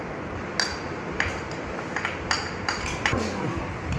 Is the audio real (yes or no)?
yes